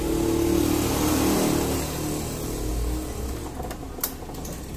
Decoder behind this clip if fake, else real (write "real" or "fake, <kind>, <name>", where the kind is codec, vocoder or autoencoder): real